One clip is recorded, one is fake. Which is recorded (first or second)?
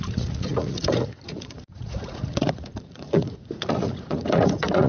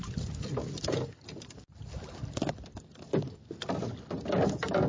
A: second